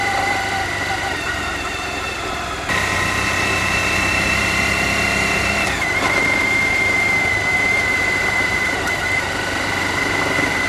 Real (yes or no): no